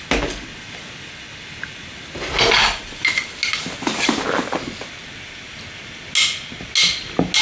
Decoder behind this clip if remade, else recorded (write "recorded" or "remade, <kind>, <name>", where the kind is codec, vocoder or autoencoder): recorded